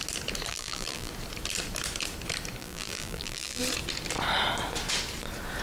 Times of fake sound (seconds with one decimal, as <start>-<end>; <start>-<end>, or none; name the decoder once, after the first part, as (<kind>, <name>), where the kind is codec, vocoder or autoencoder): 0.5-1.1 (vocoder, BigVGAN v2); 2.6-3.6